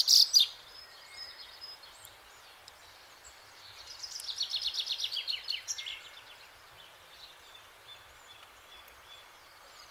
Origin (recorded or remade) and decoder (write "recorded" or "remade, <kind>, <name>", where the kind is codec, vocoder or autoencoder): remade, vocoder, BigVGAN v2